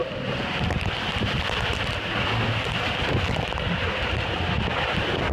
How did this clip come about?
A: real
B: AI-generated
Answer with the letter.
A